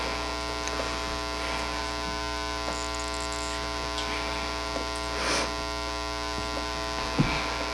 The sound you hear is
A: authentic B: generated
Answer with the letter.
A